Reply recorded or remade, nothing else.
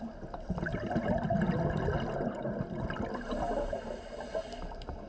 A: recorded